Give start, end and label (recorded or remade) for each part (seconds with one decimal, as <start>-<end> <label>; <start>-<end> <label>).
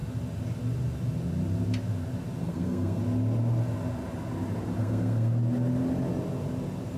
0.0-2.4 recorded; 2.4-3.0 remade; 3.0-4.8 recorded; 4.8-5.3 remade; 5.3-7.0 recorded